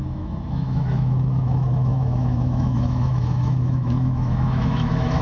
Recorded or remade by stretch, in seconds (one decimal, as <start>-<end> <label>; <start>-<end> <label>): 0.0-5.2 remade